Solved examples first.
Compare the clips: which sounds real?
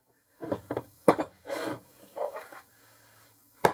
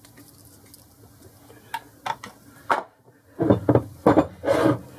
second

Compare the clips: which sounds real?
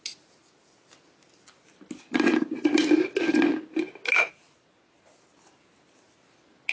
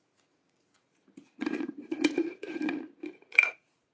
first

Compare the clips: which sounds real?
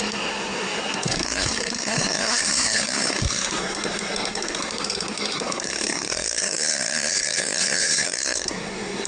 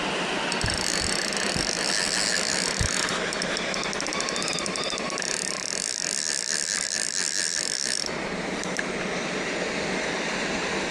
second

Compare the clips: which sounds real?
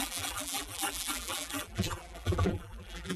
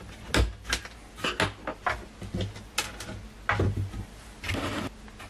second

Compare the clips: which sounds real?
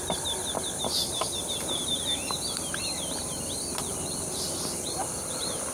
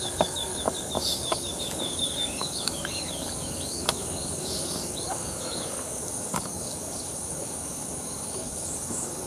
first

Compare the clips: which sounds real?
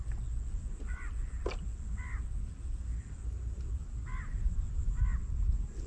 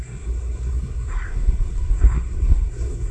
first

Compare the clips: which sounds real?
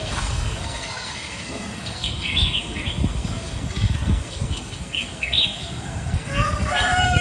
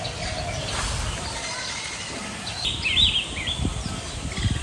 second